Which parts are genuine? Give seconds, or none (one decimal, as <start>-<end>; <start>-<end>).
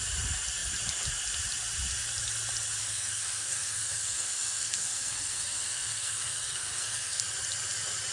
0.0-2.8; 7.2-8.1